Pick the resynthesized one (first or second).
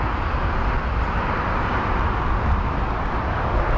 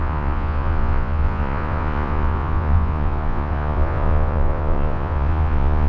second